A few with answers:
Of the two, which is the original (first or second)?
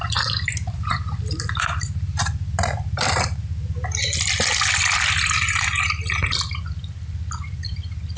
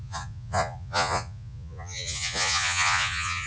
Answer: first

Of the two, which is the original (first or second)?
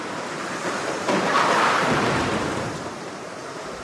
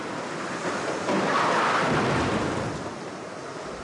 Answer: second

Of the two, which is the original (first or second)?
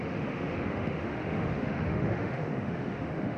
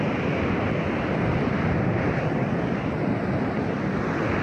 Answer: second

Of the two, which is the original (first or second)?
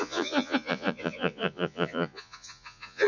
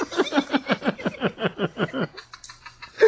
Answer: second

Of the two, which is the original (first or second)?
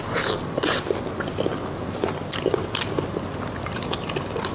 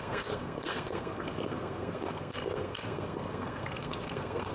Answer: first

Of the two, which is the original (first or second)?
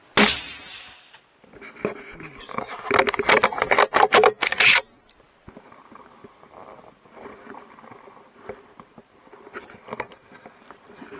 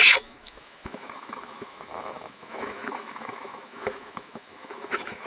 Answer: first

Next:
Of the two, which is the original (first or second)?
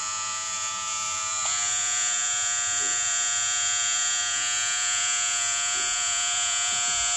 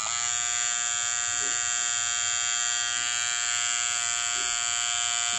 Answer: second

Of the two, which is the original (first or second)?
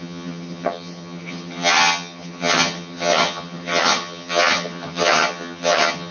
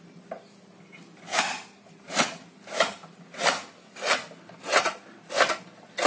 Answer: second